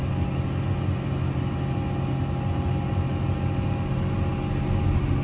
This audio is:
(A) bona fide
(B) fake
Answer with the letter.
A